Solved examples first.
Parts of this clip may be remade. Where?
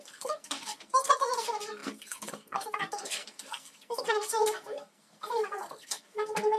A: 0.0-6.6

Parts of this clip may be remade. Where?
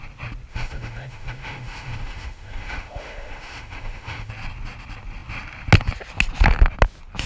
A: 0.5-4.3